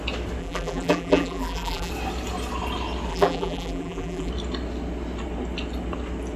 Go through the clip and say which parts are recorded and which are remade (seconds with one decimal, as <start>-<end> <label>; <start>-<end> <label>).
0.0-0.4 recorded; 0.4-1.9 remade; 1.9-3.1 recorded; 3.1-4.3 remade; 4.3-6.4 recorded